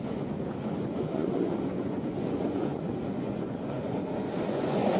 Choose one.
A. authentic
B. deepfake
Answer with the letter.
B